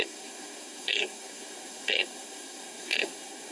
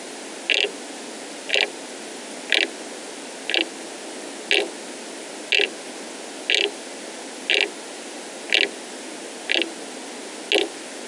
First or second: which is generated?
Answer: first